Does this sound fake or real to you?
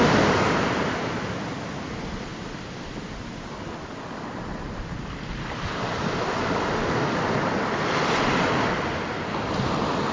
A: real